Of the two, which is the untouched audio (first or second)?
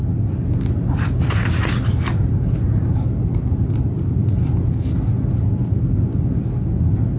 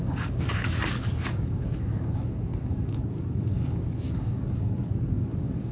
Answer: first